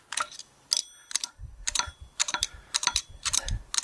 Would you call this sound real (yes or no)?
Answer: no